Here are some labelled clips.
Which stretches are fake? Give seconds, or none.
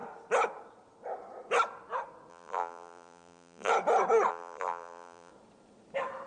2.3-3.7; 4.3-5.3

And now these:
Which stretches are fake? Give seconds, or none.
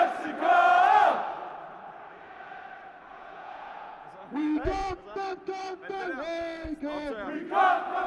3.1-4.9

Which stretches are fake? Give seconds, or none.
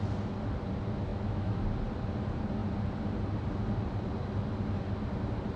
1.1-1.6